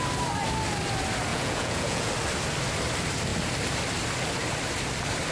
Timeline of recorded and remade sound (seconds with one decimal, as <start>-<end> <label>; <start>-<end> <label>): 0.0-1.3 recorded; 1.3-2.1 remade; 2.1-5.3 recorded